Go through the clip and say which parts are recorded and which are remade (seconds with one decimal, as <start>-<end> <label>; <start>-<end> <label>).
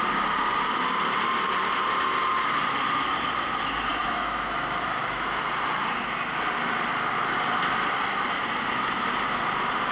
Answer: 0.0-3.9 recorded; 3.9-5.4 remade; 5.4-9.9 recorded